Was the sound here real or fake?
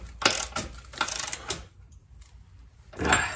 real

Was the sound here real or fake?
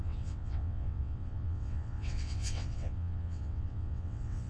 fake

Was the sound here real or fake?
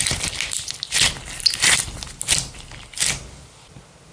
real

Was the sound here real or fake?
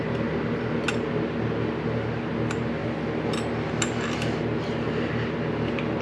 real